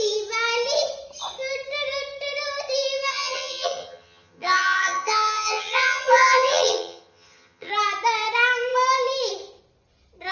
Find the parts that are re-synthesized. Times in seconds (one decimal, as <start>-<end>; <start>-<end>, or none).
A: 3.1-7.7